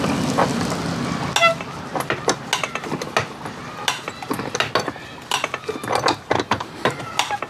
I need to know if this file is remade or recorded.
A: recorded